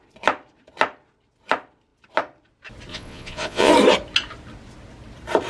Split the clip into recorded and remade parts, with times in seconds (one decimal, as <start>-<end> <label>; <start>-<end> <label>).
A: 0.0-2.9 recorded; 2.9-3.7 remade; 3.7-5.5 recorded